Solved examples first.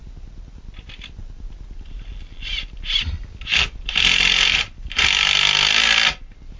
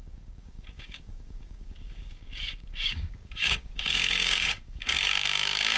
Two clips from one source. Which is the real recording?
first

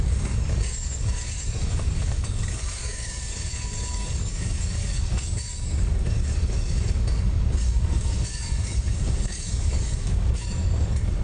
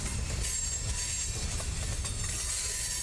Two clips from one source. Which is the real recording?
second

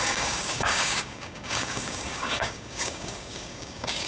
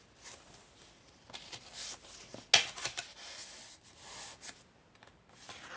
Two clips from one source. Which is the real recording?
second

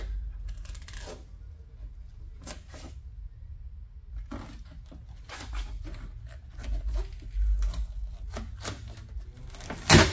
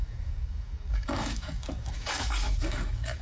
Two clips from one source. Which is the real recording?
first